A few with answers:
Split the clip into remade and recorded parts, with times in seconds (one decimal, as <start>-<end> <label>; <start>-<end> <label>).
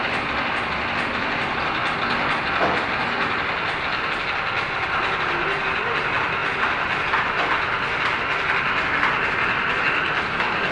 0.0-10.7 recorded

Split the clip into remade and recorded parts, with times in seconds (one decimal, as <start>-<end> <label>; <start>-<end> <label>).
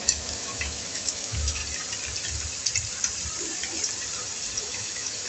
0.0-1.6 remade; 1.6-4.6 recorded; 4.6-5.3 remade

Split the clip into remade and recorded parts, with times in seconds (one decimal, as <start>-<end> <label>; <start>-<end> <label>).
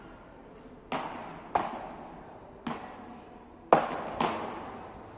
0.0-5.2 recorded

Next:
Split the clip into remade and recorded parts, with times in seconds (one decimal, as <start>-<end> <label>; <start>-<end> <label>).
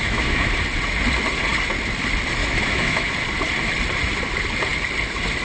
0.0-0.5 remade; 0.5-2.4 recorded; 2.4-3.1 remade; 3.1-5.4 recorded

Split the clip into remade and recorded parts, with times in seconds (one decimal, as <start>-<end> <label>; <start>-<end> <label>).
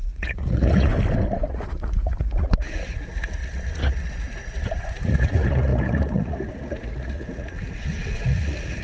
0.0-0.9 remade; 0.9-1.5 recorded; 1.5-8.8 remade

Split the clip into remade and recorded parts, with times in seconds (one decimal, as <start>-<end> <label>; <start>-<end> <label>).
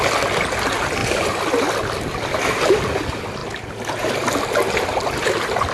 0.0-5.7 recorded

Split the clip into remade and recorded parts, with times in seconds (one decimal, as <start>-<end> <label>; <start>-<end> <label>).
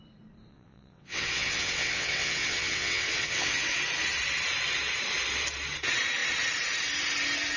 0.0-0.5 recorded; 0.5-3.8 remade; 3.8-7.6 recorded